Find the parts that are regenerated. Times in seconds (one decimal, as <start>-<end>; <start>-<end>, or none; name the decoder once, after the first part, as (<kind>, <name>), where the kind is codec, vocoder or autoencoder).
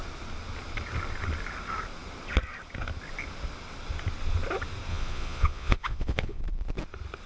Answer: 4.9-6.4 (vocoder, Vocos)